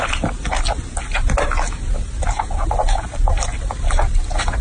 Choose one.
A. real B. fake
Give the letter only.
A